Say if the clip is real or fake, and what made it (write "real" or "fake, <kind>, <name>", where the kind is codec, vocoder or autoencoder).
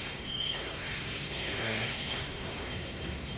fake, codec, SNAC